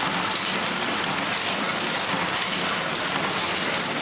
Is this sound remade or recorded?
recorded